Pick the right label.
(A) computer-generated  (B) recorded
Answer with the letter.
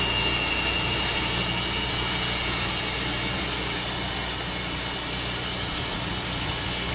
B